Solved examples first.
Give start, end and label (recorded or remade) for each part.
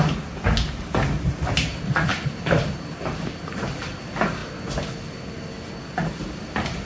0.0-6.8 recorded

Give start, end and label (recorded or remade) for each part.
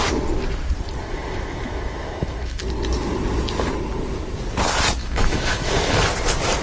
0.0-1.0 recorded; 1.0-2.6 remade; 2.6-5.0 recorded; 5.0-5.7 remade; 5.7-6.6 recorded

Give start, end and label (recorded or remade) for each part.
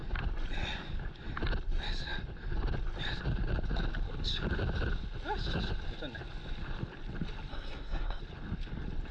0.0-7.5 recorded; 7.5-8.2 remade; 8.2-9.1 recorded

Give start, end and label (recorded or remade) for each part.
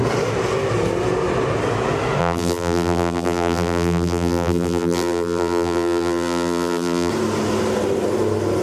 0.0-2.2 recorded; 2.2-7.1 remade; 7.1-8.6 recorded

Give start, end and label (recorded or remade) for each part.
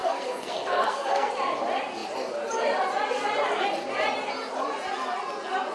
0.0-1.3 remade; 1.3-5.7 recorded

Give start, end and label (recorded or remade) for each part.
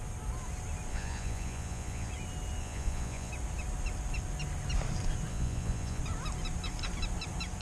0.0-0.9 recorded; 0.9-2.1 remade; 2.1-2.6 recorded; 2.6-3.3 remade; 3.3-5.3 recorded; 5.3-6.0 remade; 6.0-7.6 recorded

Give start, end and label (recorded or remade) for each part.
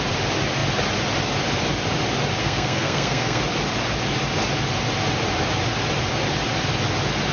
0.0-2.4 recorded; 2.4-3.4 remade; 3.4-7.3 recorded